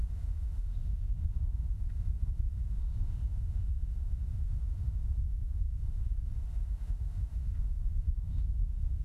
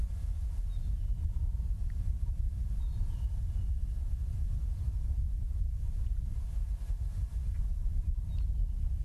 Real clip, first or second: second